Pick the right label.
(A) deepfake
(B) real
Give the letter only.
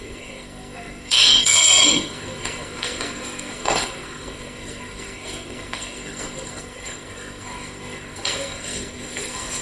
A